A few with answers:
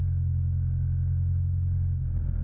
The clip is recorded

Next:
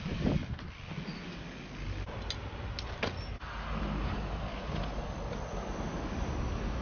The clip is recorded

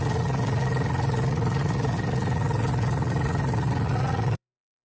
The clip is remade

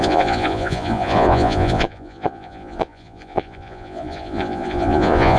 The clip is remade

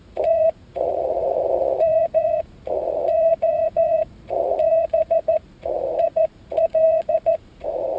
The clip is remade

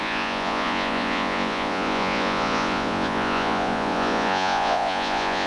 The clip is remade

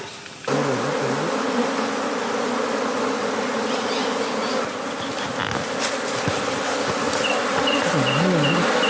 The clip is recorded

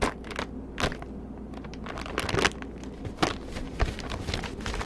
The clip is recorded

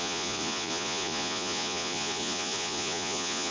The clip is remade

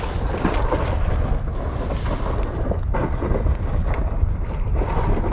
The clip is recorded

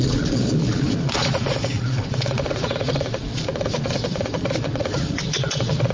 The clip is remade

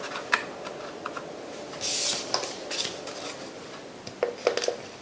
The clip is recorded